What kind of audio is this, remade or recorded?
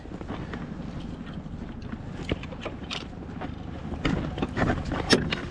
recorded